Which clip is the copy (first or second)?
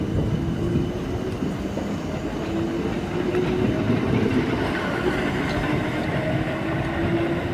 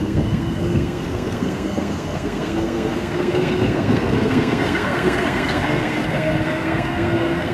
second